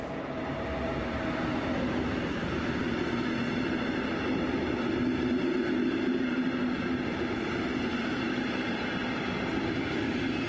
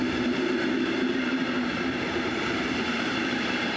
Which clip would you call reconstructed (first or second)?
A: second